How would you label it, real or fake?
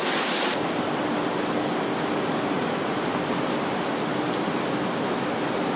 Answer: real